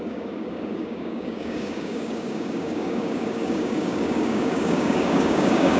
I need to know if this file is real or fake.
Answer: fake